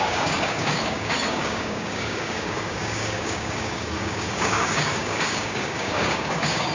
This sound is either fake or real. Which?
fake